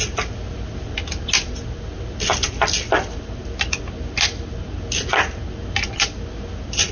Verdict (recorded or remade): recorded